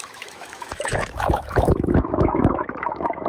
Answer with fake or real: fake